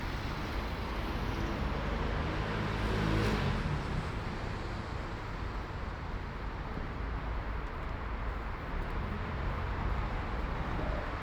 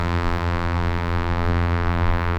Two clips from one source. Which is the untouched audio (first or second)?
first